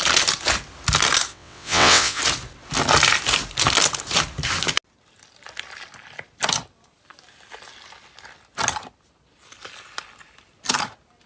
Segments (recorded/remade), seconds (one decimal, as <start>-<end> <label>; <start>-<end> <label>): 0.0-1.3 recorded; 1.3-2.2 remade; 2.2-11.3 recorded